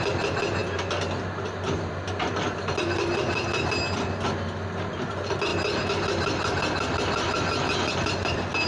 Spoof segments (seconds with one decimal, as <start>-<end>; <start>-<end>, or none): none